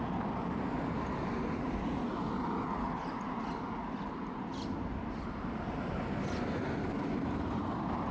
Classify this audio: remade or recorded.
recorded